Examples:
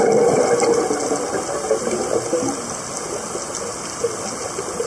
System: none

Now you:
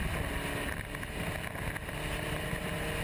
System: none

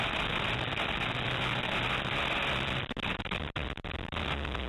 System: none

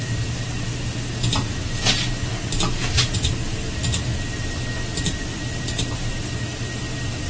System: none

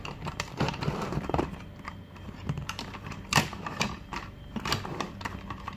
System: vocoder, BigVGAN v2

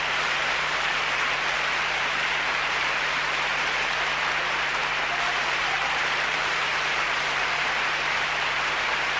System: vocoder, BigVGAN v2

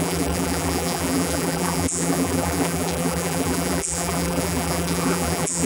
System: vocoder, BigVGAN v2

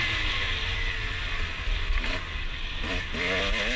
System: vocoder, BigVGAN v2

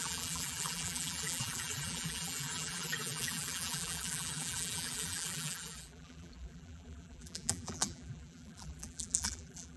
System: vocoder, BigVGAN v2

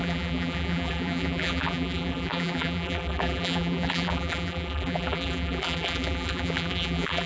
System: vocoder, BigVGAN v2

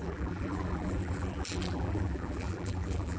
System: vocoder, BigVGAN v2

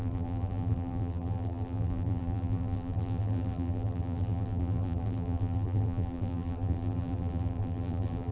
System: vocoder, BigVGAN v2